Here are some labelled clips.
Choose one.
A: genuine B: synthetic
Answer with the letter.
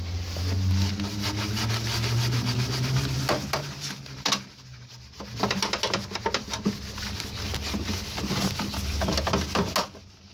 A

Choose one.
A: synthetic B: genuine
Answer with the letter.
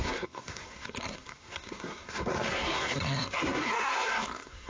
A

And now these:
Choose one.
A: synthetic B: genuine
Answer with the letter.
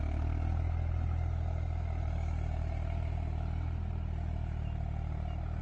B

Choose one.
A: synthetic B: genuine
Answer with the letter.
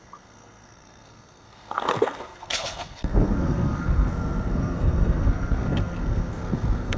A